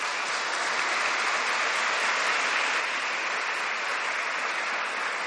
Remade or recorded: recorded